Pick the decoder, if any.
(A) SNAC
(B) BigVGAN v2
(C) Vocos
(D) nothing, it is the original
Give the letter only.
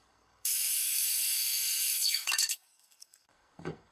A